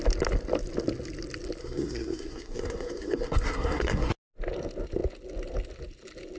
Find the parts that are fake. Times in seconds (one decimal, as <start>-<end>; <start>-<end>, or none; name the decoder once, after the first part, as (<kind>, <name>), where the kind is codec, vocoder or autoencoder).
1.6-4.1 (codec, SNAC)